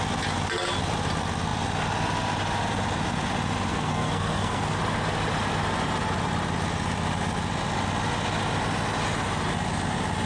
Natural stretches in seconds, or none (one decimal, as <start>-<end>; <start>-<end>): 0.0-3.7; 4.8-10.3